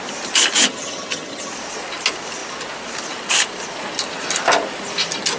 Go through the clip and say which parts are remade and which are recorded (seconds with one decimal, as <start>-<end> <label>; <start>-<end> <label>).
0.0-0.7 recorded; 0.7-1.5 remade; 1.5-5.4 recorded